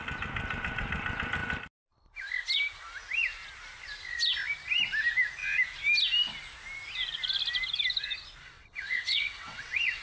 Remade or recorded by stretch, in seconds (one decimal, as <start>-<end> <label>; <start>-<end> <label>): 0.0-8.4 recorded; 8.4-10.0 remade